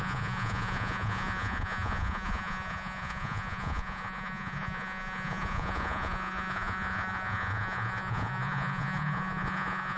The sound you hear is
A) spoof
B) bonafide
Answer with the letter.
A